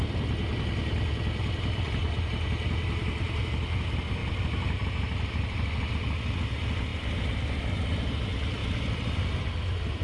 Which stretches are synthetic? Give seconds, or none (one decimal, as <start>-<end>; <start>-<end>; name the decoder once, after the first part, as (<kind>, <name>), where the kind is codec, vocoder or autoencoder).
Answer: 4.2-5.9 (vocoder, BigVGAN v2); 6.9-7.8; 8.6-9.4